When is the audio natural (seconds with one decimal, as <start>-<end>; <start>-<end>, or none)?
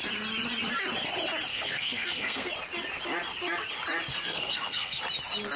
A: 0.0-1.5; 2.5-4.1; 5.0-5.6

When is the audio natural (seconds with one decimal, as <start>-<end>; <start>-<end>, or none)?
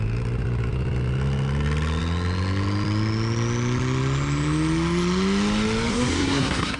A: 0.0-5.9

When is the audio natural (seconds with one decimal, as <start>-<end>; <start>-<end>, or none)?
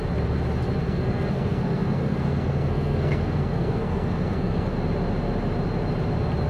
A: 0.0-0.8; 4.7-6.5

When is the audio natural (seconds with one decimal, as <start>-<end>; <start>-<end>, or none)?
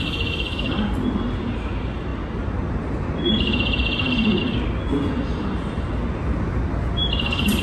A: 0.0-7.6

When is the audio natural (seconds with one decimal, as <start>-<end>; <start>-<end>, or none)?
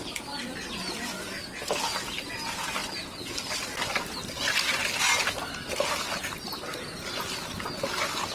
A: 0.0-8.3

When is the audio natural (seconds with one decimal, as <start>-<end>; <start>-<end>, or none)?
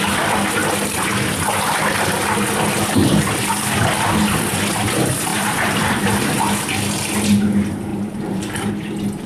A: 0.0-5.3; 5.8-7.9; 8.7-9.3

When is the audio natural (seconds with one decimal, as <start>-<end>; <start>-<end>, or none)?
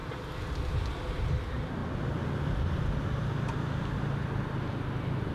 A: 0.0-5.3